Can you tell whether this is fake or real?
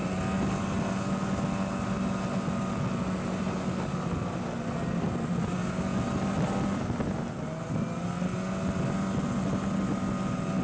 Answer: real